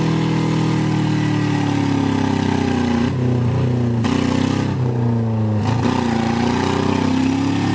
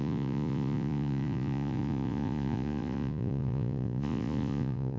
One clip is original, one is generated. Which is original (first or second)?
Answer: first